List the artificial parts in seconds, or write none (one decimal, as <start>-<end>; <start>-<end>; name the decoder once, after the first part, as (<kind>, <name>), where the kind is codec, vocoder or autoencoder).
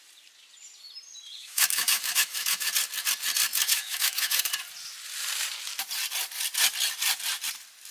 1.4-2.7 (autoencoder, DAC-VAE); 3.5-4.5